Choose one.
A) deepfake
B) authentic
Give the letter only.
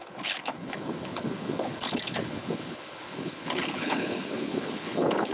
A